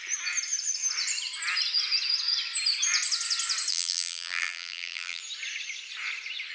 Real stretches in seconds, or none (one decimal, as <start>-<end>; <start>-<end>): 0.0-3.7; 5.2-6.5